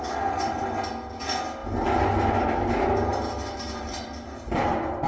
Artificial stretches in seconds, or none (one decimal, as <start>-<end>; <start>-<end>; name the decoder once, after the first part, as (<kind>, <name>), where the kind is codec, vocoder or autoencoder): 3.1-5.1 (vocoder, BigVGAN v2)